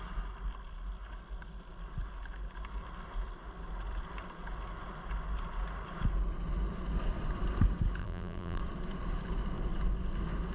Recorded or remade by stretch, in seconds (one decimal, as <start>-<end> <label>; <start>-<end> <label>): 0.0-8.0 recorded; 8.0-8.6 remade; 8.6-10.5 recorded